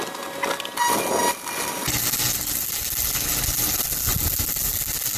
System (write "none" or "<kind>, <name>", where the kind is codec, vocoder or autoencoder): none